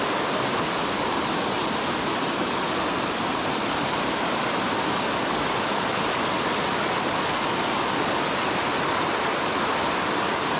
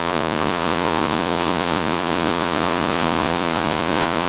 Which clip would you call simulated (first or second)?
second